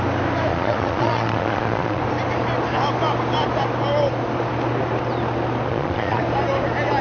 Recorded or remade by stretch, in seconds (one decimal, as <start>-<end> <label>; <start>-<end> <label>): 0.0-0.5 recorded; 0.5-2.0 remade; 2.0-5.7 recorded; 5.7-6.2 remade; 6.2-7.0 recorded